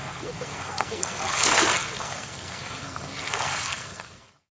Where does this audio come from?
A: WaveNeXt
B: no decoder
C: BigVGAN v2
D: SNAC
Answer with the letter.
D